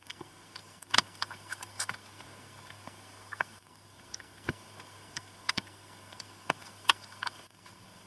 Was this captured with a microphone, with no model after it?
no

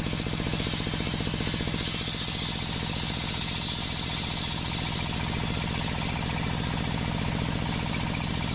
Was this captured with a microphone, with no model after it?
yes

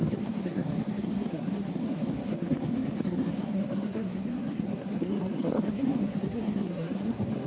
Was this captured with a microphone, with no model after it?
no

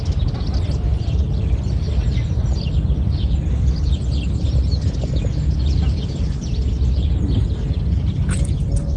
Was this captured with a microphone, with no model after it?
yes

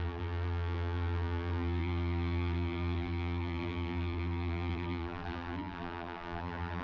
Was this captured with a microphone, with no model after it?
no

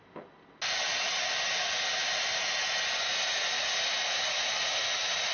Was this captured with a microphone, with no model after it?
yes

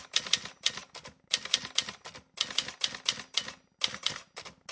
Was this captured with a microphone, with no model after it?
yes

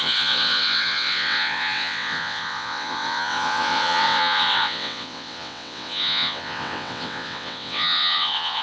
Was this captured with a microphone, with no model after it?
no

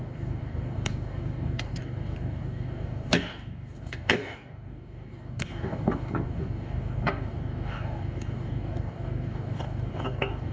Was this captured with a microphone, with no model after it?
no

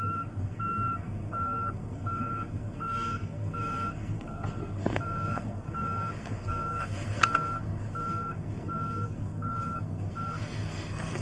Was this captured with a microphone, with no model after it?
no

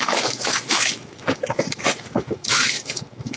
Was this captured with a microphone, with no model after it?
no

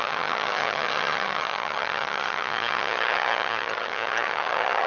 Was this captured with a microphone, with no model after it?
no